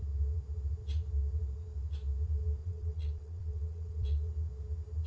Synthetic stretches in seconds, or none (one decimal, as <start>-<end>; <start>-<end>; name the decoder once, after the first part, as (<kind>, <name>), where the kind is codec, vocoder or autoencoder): 2.6-4.3 (vocoder, WaveNeXt)